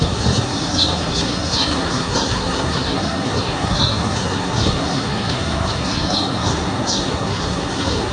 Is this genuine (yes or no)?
no